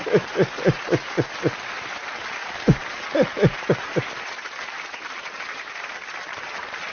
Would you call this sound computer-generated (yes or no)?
no